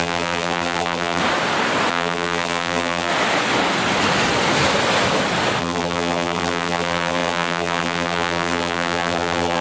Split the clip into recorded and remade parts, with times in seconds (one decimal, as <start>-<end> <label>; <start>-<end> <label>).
0.0-1.2 remade; 1.2-1.9 recorded; 1.9-3.1 remade; 3.1-5.6 recorded; 5.6-9.6 remade